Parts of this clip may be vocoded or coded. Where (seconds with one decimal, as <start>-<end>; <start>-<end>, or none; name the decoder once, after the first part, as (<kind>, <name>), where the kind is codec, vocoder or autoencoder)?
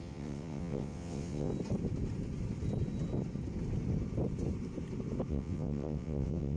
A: 0.0-1.5 (vocoder, WaveNeXt); 5.3-6.6